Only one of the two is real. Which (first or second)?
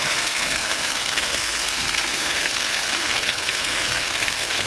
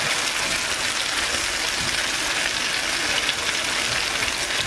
second